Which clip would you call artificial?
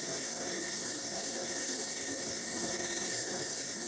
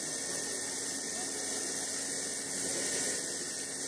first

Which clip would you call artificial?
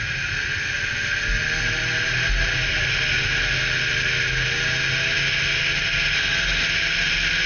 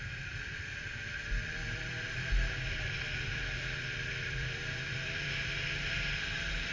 second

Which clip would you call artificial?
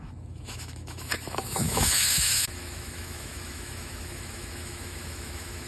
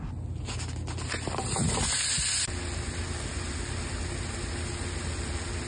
first